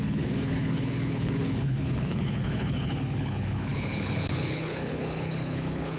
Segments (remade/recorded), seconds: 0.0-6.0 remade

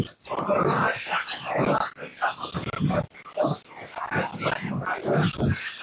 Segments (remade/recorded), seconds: 0.0-5.8 recorded

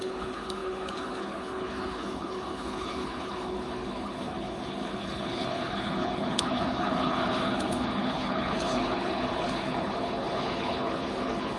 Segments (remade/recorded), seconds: 0.0-11.6 remade

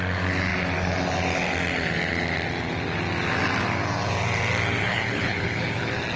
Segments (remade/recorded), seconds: 0.0-4.8 recorded; 4.8-5.8 remade; 5.8-6.2 recorded

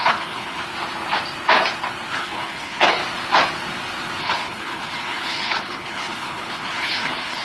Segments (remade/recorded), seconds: 0.0-0.6 remade; 0.6-2.1 recorded; 2.1-3.0 remade; 3.0-4.2 recorded; 4.2-7.4 remade

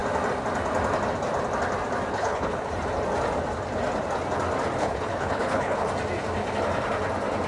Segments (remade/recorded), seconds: 0.0-2.1 recorded; 2.1-2.7 remade; 2.7-4.8 recorded; 4.8-5.9 remade; 5.9-7.5 recorded